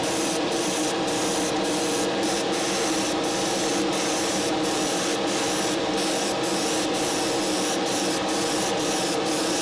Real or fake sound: real